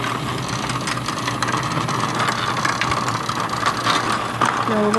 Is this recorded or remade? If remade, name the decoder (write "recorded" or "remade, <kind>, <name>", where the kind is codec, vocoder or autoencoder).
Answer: recorded